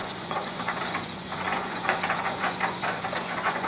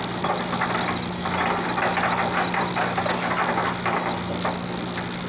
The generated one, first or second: first